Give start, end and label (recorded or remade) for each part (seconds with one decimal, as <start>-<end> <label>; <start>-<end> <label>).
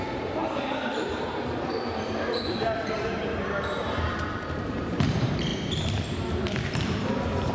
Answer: 0.0-5.5 remade; 5.5-7.5 recorded